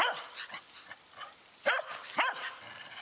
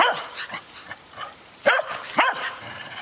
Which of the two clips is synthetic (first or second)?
second